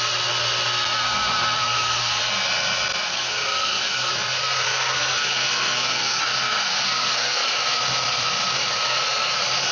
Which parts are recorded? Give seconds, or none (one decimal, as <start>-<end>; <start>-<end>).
0.0-1.6; 2.2-3.1; 4.1-4.9; 6.2-6.7; 7.4-9.7